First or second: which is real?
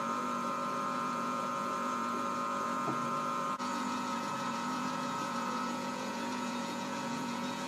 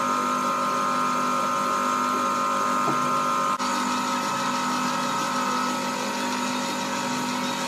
second